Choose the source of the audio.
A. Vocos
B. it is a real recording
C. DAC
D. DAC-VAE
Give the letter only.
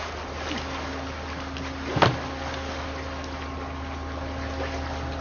B